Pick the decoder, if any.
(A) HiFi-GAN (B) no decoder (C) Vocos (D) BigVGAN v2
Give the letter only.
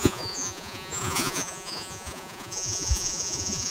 C